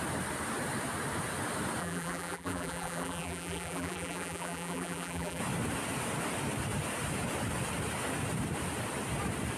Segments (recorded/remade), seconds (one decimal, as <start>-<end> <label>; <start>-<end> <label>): 0.0-1.8 recorded; 1.8-5.4 remade; 5.4-9.6 recorded